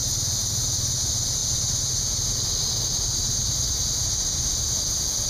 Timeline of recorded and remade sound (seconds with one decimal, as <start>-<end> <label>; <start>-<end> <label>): 0.0-0.5 remade; 0.5-5.3 recorded